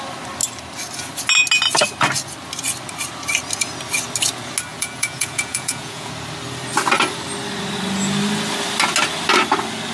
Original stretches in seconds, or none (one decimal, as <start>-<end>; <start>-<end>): 0.0-4.7; 6.1-9.9